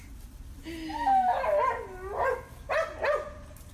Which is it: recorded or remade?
recorded